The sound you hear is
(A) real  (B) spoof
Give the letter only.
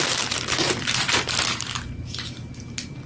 B